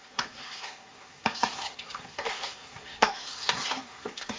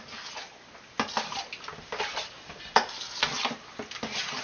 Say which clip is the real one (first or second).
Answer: second